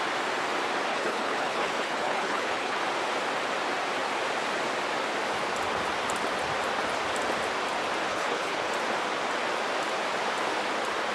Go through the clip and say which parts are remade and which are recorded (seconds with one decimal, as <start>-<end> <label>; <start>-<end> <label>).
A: 0.0-0.9 recorded; 0.9-2.8 remade; 2.8-8.1 recorded; 8.1-8.7 remade; 8.7-11.1 recorded